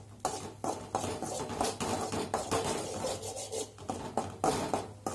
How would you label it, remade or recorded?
recorded